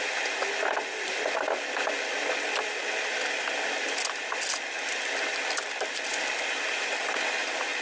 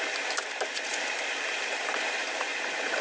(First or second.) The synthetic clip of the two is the second